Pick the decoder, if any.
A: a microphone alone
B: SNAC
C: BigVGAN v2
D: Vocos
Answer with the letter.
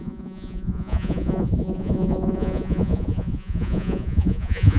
D